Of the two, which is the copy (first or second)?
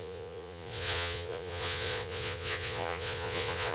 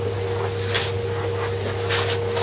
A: first